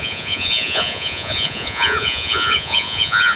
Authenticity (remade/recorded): remade